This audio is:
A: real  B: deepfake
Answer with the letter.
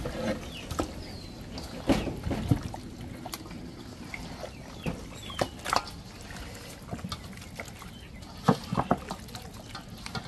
A